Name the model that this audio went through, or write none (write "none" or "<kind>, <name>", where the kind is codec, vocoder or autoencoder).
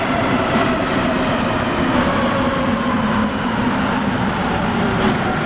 vocoder, BigVGAN v2